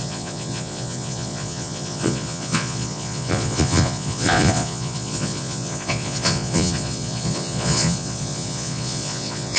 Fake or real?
fake